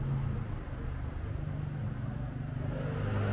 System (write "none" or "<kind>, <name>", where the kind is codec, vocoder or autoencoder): none